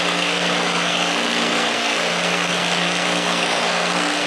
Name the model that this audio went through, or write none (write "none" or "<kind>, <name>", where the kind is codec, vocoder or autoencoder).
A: codec, SNAC